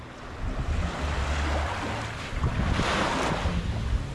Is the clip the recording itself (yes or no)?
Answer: yes